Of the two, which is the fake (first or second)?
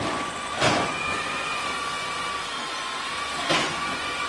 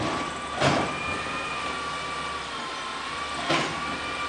first